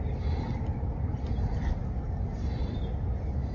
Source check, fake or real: real